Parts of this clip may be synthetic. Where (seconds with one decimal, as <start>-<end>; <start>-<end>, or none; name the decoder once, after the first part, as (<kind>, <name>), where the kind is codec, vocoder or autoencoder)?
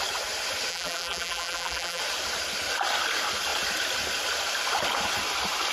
0.7-2.0 (vocoder, BigVGAN v2)